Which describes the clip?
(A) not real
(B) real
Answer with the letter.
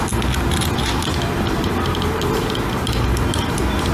B